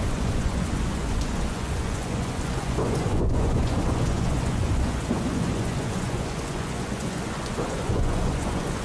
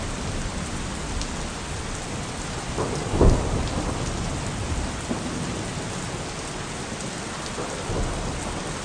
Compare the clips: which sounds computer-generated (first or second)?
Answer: first